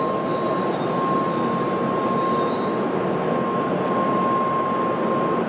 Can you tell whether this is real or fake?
real